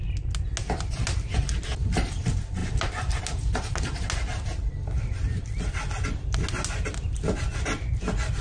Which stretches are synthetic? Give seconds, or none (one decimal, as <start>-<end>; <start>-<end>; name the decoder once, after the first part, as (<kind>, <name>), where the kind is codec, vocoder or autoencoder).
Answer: none